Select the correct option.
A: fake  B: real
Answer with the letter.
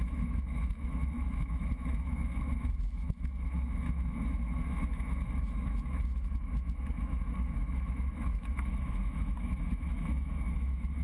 A